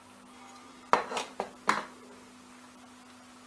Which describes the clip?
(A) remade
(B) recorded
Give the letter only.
B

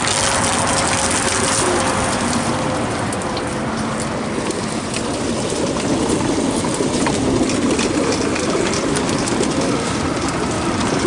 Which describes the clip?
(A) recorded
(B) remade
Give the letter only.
A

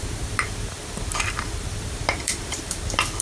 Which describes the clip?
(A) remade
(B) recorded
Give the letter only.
A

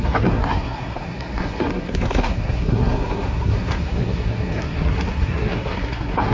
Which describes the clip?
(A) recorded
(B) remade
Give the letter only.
B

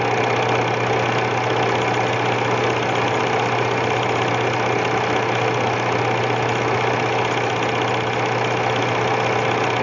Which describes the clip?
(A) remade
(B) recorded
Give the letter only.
B